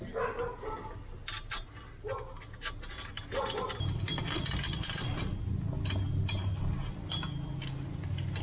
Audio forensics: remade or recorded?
recorded